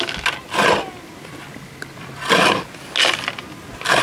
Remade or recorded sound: recorded